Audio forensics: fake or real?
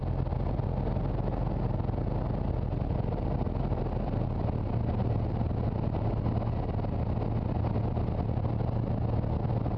real